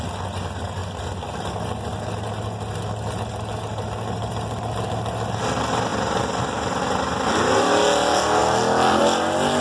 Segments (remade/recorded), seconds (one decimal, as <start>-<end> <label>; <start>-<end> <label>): 0.0-9.6 recorded

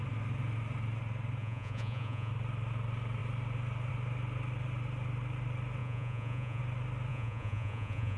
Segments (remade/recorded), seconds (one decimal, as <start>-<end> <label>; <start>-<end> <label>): 0.0-1.4 recorded; 1.4-2.3 remade; 2.3-5.8 recorded; 5.8-6.6 remade; 6.6-7.1 recorded; 7.1-8.2 remade

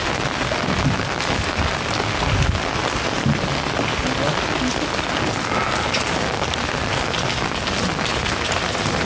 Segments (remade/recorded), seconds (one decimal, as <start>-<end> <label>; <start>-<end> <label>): 0.0-8.1 recorded; 8.1-9.1 remade

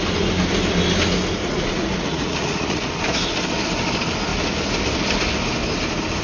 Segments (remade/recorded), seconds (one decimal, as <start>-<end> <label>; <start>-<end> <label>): 0.0-1.4 recorded; 1.4-2.9 remade; 2.9-6.2 recorded

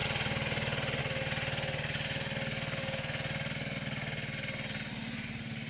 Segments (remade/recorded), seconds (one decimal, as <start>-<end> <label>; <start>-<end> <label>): 0.0-5.7 recorded

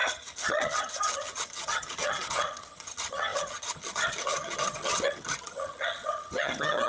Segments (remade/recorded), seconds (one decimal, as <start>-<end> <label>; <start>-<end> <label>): 0.0-6.9 remade

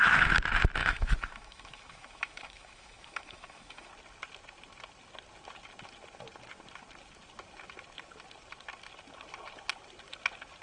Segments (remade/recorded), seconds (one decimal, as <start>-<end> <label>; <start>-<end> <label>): 0.0-0.8 recorded; 0.8-3.9 remade; 3.9-10.6 recorded

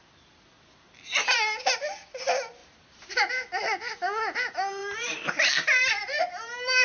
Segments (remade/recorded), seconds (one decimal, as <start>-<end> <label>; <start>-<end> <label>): 0.0-2.6 recorded; 2.6-3.3 remade; 3.3-4.8 recorded; 4.8-5.5 remade; 5.5-6.8 recorded